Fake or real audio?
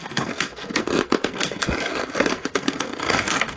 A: fake